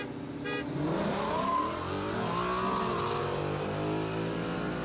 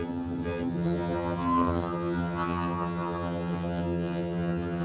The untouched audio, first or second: first